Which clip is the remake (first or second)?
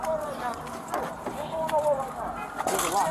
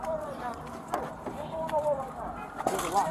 second